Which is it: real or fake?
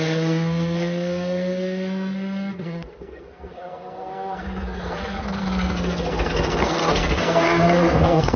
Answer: fake